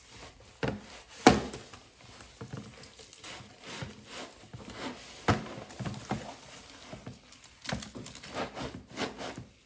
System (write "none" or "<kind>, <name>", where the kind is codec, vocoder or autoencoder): none